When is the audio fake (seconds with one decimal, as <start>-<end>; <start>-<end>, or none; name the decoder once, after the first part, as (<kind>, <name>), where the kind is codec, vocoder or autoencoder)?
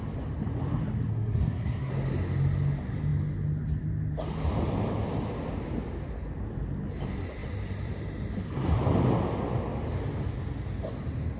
1.1-1.9 (codec, SNAC)